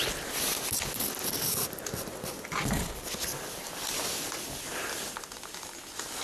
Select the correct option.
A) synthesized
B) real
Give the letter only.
B